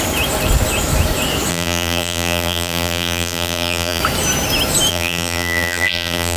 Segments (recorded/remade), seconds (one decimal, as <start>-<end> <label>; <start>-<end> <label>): 0.0-1.5 recorded; 1.5-4.0 remade; 4.0-4.9 recorded; 4.9-6.4 remade